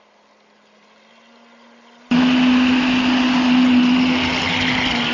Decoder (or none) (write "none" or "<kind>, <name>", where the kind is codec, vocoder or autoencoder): none